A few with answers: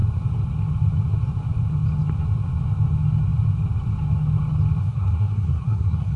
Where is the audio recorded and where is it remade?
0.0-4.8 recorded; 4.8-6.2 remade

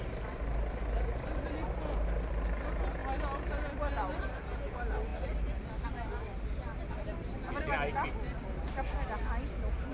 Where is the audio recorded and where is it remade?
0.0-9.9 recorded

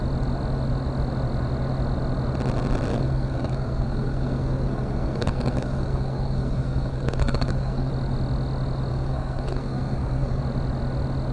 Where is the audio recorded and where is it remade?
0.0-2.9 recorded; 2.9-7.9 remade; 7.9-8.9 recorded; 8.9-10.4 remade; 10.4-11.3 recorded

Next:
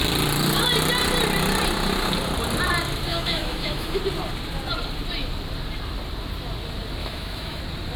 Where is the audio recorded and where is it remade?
0.0-3.1 recorded; 3.1-4.0 remade; 4.0-7.0 recorded; 7.0-7.6 remade; 7.6-8.0 recorded